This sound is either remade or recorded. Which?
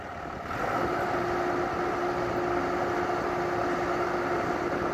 recorded